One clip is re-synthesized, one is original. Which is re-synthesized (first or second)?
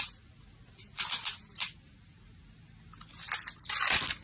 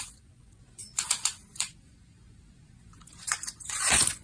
second